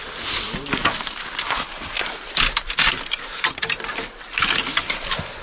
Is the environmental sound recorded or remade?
recorded